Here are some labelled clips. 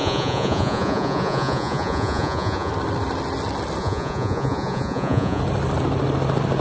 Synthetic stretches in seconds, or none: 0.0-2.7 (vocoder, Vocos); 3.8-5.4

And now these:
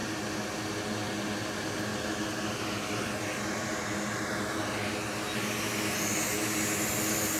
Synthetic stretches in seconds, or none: none

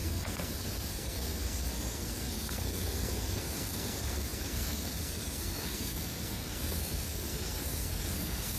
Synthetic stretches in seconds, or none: 0.0-8.6 (codec, SNAC)

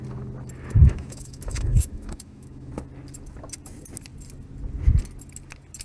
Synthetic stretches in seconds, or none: 0.8-2.7 (autoencoder, DAC-VAE)

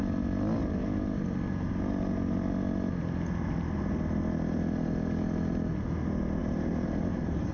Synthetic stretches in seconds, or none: 6.4-7.5 (vocoder, BigVGAN v2)

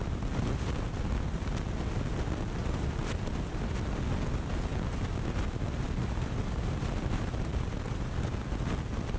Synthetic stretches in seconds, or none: 2.6-3.2 (vocoder, BigVGAN v2); 6.0-8.1

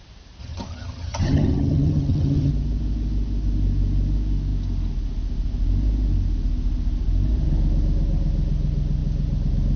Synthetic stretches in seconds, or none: 0.4-2.5 (vocoder, HiFi-GAN)

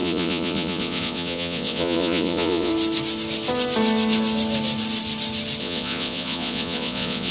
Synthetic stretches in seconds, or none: 0.0-2.7 (vocoder, Vocos); 5.6-7.3